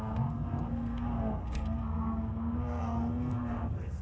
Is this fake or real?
fake